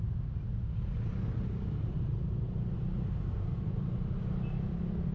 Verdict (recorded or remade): recorded